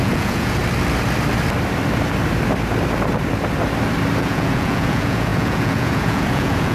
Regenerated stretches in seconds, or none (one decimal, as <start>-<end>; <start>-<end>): 0.0-0.6; 4.2-6.7

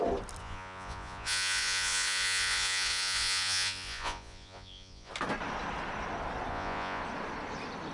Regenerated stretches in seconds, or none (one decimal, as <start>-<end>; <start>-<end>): 0.4-5.1; 6.5-7.0

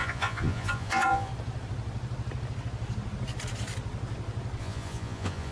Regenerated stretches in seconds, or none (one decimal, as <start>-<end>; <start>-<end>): 0.0-1.3; 4.6-5.5

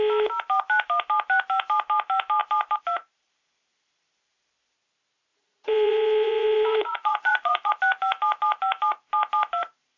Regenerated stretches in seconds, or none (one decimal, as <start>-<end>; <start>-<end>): 5.3-7.7

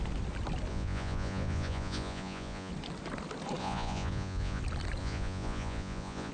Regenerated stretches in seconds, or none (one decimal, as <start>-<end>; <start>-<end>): 0.7-2.7; 3.6-4.6; 5.0-6.3

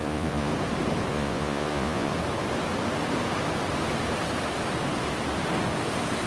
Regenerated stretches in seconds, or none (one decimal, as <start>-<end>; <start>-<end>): 0.0-0.5; 1.1-2.1

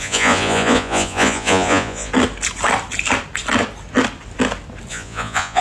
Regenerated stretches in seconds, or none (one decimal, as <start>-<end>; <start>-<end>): 0.0-2.1; 4.9-5.6

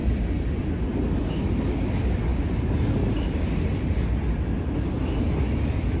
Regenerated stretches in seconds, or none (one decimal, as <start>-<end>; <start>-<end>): none